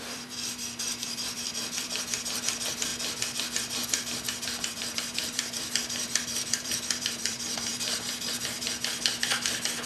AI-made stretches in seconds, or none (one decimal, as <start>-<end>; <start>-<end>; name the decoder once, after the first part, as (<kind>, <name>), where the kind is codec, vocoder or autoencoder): 0.0-2.9 (vocoder, BigVGAN v2); 4.7-7.7

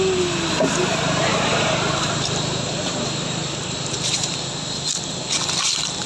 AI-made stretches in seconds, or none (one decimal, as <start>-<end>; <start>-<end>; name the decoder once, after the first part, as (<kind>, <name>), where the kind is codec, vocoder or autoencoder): 0.8-4.5 (vocoder, BigVGAN v2)